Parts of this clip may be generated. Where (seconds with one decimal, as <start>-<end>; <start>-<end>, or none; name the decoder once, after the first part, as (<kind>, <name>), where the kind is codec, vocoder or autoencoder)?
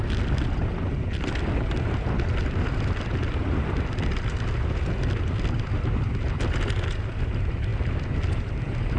none